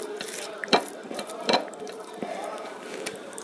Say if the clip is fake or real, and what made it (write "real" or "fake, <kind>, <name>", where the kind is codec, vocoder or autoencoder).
fake, vocoder, BigVGAN v2